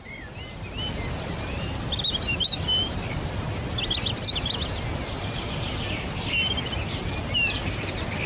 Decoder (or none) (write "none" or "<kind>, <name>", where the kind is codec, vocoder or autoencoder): none